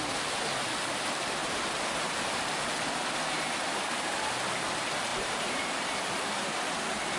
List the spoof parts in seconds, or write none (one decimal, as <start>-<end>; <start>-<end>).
1.4-2.2; 5.1-6.5